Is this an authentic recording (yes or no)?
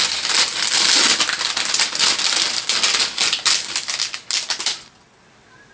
yes